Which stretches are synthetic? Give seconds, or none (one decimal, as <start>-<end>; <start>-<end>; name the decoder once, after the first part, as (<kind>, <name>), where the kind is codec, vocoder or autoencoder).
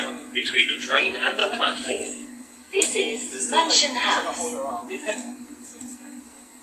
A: 0.0-3.4 (codec, SNAC); 4.7-6.6